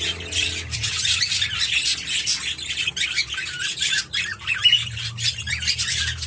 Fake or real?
real